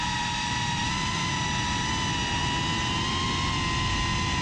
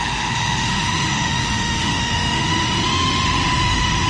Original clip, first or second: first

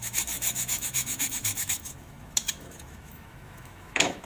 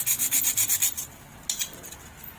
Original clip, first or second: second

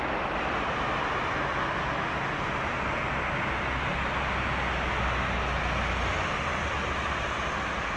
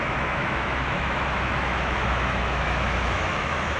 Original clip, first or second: first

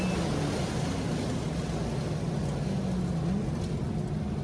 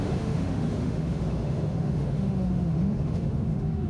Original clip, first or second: first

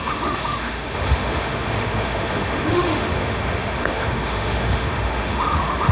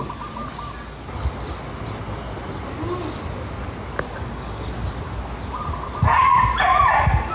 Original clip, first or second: second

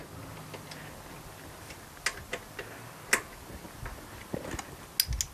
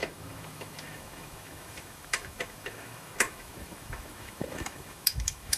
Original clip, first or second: first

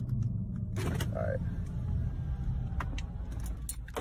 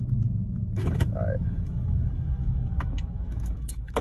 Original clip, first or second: first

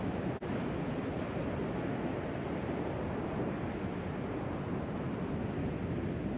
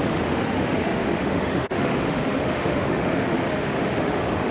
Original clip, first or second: first